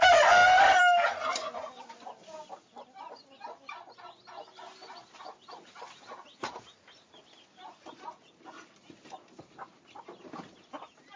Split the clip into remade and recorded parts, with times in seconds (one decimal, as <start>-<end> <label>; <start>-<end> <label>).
0.0-11.2 recorded